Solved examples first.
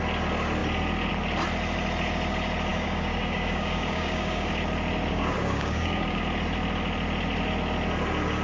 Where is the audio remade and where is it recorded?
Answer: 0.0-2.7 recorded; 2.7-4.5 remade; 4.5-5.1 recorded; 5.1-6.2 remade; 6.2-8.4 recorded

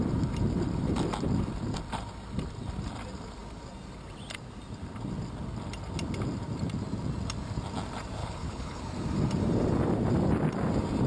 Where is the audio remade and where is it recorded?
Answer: 0.0-8.2 recorded; 8.2-8.8 remade; 8.8-11.1 recorded

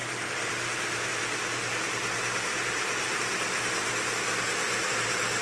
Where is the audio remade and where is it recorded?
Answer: 0.0-3.2 remade; 3.2-5.4 recorded

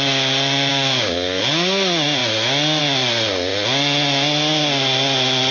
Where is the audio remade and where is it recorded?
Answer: 0.0-0.7 recorded; 0.7-1.4 remade; 1.4-5.5 recorded

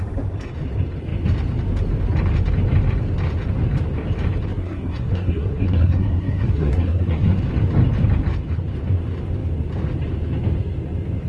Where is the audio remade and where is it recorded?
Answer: 0.0-4.5 recorded; 4.5-7.4 remade; 7.4-11.3 recorded

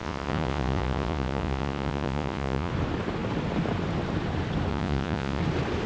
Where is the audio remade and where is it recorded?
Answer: 0.0-2.7 remade; 2.7-4.7 recorded; 4.7-5.4 remade; 5.4-5.9 recorded